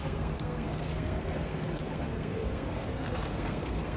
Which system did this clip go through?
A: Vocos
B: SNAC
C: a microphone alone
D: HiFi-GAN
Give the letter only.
B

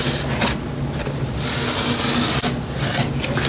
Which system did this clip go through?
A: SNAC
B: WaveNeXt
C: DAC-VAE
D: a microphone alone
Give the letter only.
D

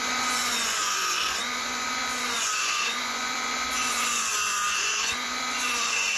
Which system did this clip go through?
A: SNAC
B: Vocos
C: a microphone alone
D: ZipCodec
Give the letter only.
B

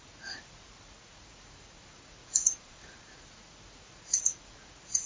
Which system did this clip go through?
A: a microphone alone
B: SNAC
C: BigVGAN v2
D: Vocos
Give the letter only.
D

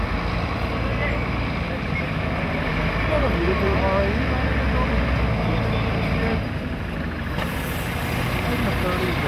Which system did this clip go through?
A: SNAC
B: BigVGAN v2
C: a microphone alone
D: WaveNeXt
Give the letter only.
C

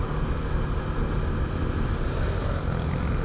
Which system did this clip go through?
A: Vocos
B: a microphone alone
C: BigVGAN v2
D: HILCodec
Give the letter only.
B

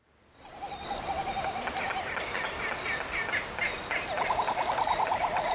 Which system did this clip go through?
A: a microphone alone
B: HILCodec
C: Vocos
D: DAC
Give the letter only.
A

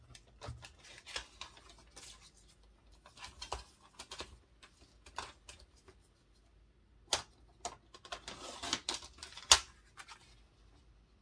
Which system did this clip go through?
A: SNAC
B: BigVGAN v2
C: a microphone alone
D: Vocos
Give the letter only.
C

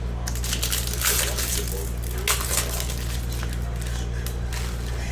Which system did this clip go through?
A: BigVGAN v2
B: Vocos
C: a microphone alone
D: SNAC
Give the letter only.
C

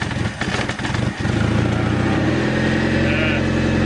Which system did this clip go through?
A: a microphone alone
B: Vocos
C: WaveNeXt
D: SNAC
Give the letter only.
A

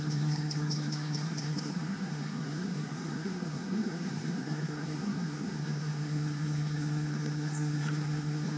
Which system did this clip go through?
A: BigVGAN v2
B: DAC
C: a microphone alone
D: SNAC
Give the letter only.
D